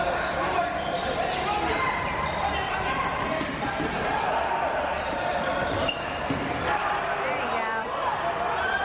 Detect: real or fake real